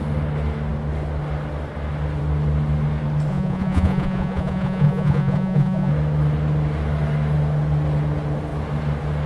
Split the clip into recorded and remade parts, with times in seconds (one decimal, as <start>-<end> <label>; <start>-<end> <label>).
0.0-3.3 recorded; 3.3-5.9 remade; 5.9-9.3 recorded